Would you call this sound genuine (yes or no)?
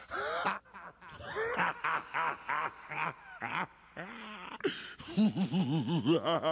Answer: yes